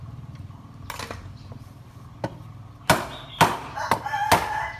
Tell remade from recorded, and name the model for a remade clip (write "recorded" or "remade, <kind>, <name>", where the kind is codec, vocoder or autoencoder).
recorded